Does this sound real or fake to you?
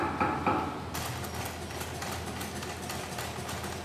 real